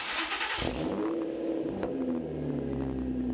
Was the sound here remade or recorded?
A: recorded